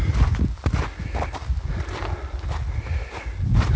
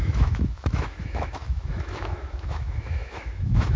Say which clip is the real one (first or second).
first